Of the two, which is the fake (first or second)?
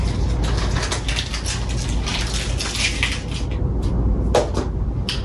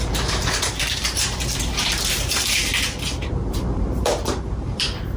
second